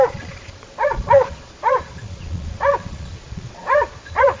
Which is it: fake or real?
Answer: fake